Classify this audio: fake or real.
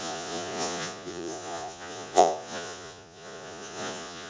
fake